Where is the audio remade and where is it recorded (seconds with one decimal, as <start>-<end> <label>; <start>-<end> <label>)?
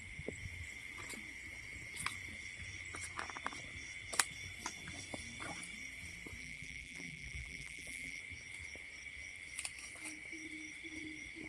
0.0-6.4 recorded; 6.4-8.2 remade; 8.2-11.5 recorded